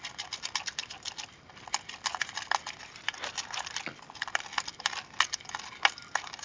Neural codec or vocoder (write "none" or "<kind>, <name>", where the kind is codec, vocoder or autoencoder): none